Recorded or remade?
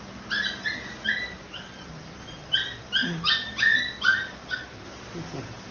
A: recorded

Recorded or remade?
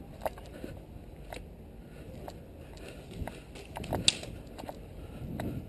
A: recorded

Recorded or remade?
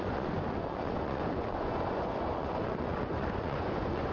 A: remade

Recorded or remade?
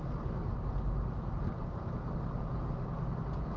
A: recorded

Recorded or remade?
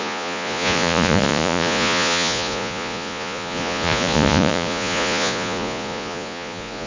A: remade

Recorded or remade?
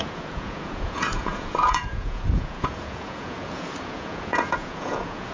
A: remade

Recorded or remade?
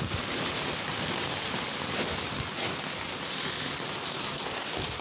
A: recorded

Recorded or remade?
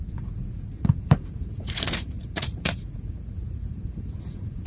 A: remade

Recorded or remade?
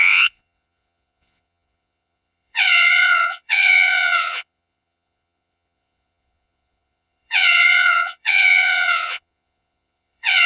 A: remade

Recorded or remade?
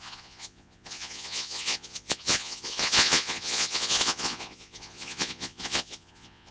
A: remade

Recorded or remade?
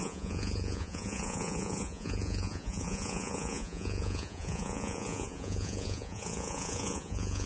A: remade